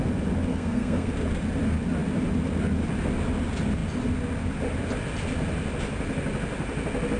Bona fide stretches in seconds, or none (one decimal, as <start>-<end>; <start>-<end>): 0.0-0.5; 1.1-7.2